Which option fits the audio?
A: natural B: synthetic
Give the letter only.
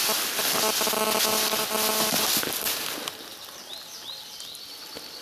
A